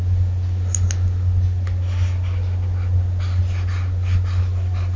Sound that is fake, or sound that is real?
real